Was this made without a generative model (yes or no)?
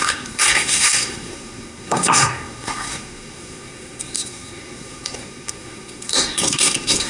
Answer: no